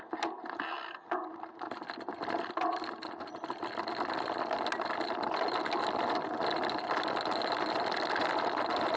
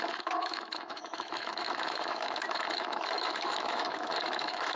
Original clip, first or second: first